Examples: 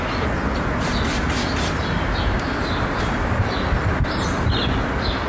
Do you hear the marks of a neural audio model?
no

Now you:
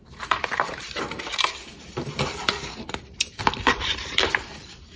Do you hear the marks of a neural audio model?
yes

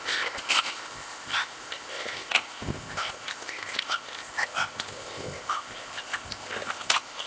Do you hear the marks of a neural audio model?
yes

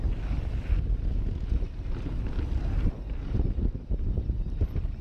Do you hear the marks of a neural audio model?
no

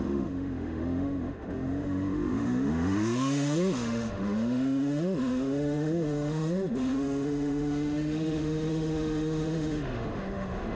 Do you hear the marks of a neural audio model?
yes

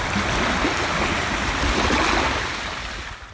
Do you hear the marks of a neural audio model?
no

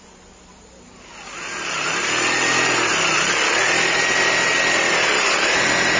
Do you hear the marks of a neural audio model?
no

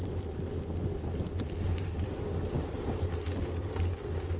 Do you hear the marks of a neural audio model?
no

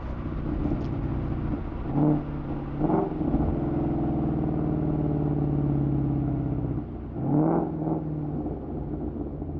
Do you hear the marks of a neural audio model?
no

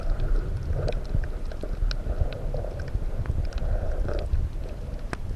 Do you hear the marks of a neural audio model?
no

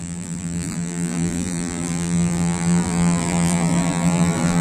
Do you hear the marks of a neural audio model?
yes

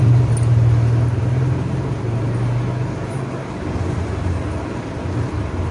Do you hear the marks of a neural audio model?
no